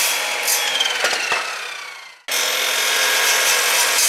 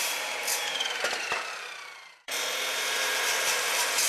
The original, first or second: first